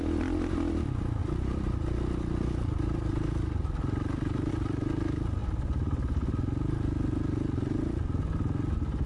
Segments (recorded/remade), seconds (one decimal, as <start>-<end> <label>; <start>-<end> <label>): 0.0-1.2 recorded; 1.2-4.5 remade; 4.5-9.1 recorded